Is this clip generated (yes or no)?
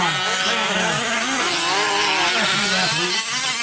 no